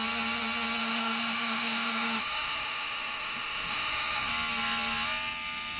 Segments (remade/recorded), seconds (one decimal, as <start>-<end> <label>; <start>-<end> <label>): 0.0-0.8 recorded; 0.8-4.3 remade; 4.3-5.8 recorded